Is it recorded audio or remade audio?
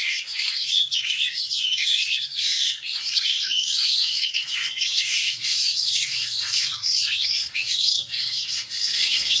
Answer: remade